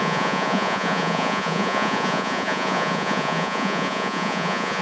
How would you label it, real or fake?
fake